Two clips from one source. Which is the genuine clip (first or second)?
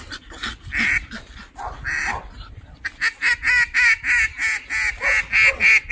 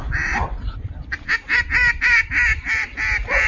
first